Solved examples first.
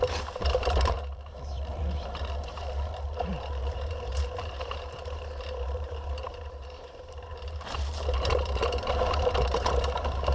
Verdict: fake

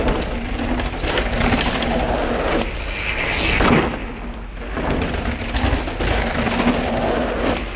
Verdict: real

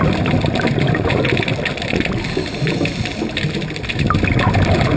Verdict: real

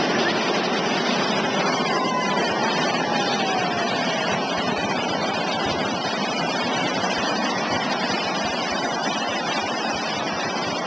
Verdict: real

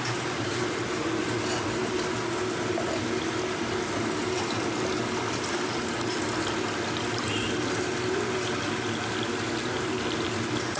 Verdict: real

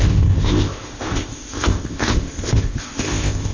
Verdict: fake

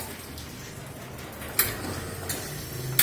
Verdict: real